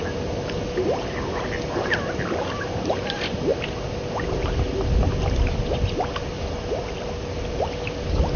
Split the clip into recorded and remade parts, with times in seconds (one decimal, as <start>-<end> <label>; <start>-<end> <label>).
0.0-8.4 recorded